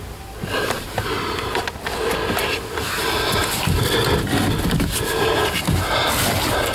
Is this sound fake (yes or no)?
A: no